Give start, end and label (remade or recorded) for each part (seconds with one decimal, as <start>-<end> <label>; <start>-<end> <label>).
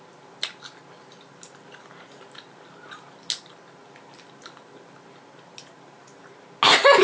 0.0-7.0 recorded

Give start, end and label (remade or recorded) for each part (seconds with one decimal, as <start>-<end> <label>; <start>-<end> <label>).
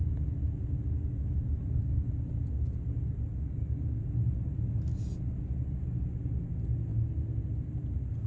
0.0-8.3 recorded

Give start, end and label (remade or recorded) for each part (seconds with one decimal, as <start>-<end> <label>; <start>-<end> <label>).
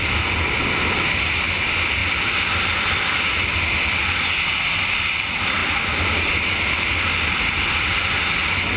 0.0-8.8 recorded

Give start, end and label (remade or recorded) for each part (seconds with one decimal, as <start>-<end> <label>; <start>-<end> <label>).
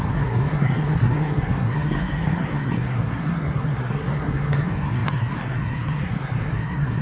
0.0-7.0 remade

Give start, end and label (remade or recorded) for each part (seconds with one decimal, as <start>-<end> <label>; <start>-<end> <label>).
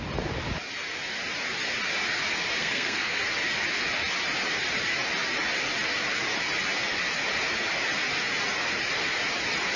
0.0-2.6 recorded; 2.6-3.2 remade; 3.2-9.8 recorded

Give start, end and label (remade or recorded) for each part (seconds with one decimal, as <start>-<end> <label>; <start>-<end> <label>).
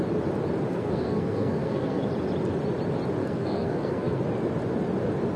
0.0-0.7 recorded; 0.7-2.1 remade; 2.1-3.2 recorded; 3.2-4.2 remade; 4.2-5.4 recorded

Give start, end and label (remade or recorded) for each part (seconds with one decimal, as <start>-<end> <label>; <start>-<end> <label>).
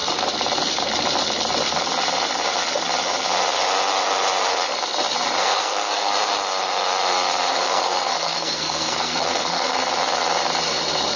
0.0-5.4 recorded; 5.4-6.1 remade; 6.1-7.5 recorded; 7.5-9.8 remade; 9.8-11.2 recorded